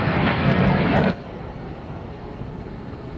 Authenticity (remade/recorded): remade